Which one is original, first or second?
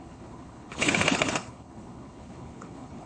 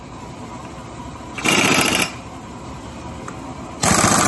second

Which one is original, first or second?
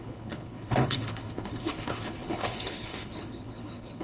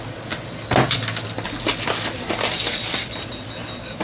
second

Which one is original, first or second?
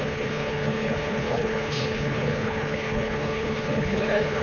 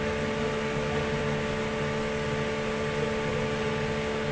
second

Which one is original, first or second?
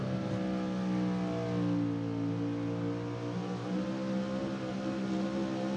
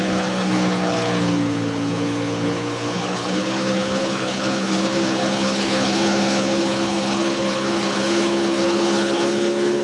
first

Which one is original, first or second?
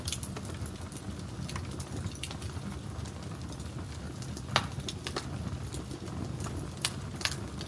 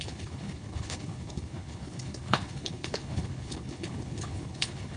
first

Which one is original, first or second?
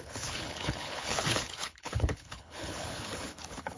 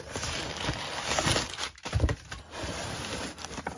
second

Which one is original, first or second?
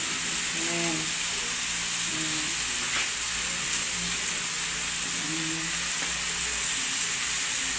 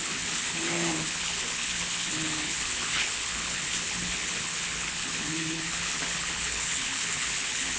first